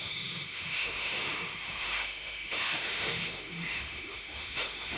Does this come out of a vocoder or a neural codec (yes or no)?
yes